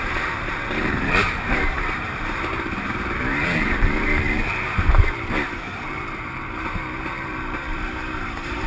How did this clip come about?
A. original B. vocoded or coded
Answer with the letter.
B